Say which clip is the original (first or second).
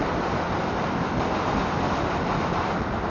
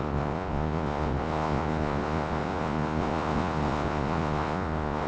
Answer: first